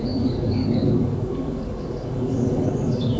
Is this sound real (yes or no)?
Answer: no